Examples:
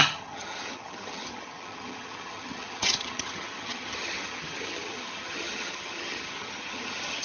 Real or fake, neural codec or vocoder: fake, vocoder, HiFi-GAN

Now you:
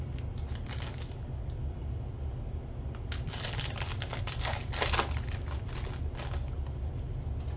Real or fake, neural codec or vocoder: real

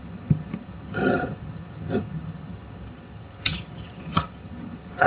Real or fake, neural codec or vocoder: fake, vocoder, HiFi-GAN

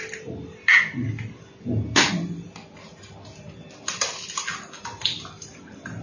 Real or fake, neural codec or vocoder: real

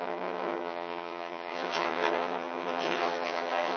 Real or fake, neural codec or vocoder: fake, vocoder, HiFi-GAN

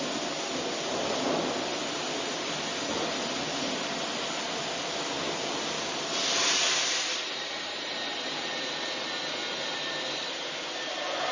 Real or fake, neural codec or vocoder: real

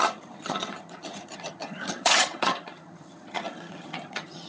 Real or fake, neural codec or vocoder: fake, vocoder, HiFi-GAN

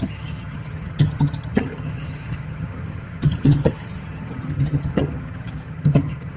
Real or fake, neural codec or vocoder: fake, vocoder, HiFi-GAN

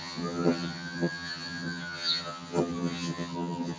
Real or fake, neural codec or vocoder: fake, vocoder, HiFi-GAN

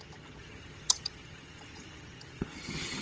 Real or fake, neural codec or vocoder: fake, vocoder, HiFi-GAN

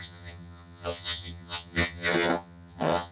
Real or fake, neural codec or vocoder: fake, vocoder, HiFi-GAN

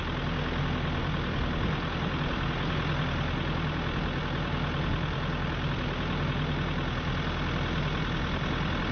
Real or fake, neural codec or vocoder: real